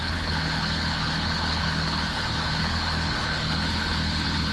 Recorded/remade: remade